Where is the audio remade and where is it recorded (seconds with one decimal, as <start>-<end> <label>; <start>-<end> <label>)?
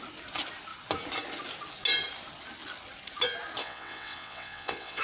0.0-3.6 recorded; 3.6-5.0 remade